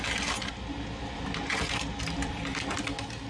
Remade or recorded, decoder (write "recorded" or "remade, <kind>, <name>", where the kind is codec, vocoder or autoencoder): recorded